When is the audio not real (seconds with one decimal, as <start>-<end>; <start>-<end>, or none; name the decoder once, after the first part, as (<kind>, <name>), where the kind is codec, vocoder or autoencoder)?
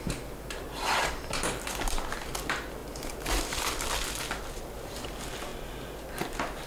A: 0.0-6.7 (vocoder, BigVGAN v2)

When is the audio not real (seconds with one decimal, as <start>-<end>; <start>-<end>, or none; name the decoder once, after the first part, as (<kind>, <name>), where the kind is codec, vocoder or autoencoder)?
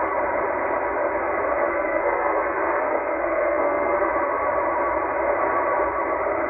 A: 1.7-4.1 (codec, SNAC)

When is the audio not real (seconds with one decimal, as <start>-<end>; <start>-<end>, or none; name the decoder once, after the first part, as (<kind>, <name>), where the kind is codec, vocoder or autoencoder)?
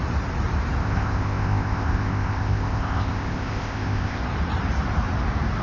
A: 0.8-4.2 (codec, ZipCodec)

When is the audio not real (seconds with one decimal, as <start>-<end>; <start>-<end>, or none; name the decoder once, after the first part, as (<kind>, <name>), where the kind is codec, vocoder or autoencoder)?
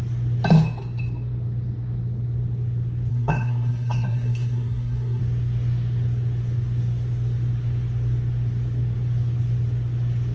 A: 3.1-5.2 (codec, SNAC)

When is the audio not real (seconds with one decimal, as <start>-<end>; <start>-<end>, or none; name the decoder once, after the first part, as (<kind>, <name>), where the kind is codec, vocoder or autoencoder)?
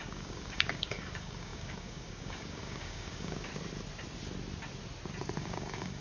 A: 0.0-3.5 (codec, DAC); 5.4-6.0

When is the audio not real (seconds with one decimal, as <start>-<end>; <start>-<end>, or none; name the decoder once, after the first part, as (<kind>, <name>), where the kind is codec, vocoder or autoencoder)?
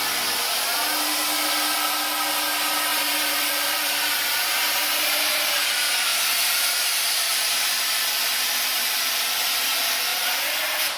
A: 2.9-5.5 (vocoder, BigVGAN v2); 6.1-9.1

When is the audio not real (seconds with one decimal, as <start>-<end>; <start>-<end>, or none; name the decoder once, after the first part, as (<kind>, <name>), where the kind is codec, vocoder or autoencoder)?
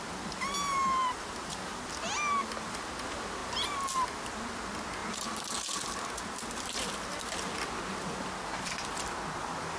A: 1.0-1.6 (vocoder, BigVGAN v2)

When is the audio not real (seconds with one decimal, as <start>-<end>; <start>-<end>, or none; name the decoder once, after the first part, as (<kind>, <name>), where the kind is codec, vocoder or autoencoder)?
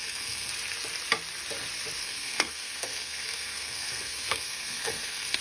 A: 0.0-0.5 (codec, SNAC); 2.0-5.4